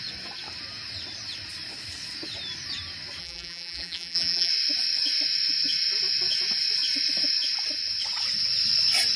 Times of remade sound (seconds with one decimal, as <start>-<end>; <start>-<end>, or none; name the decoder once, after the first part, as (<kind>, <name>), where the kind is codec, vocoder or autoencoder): 3.2-4.5 (vocoder, BigVGAN v2)